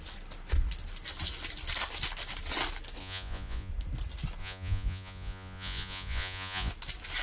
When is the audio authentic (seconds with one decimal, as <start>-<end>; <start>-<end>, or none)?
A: 0.0-3.0; 3.7-4.4; 6.7-7.2